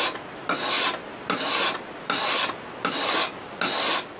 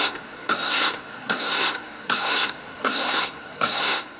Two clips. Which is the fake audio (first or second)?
second